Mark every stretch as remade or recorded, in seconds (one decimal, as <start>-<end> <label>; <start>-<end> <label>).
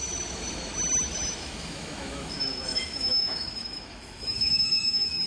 0.0-2.3 remade; 2.3-2.7 recorded; 2.7-5.3 remade